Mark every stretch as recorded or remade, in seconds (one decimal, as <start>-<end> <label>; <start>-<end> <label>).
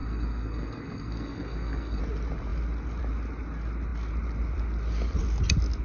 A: 0.0-2.0 remade; 2.0-5.8 recorded